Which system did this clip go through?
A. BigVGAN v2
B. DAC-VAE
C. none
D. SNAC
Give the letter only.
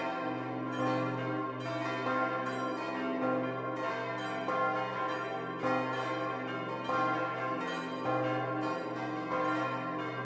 C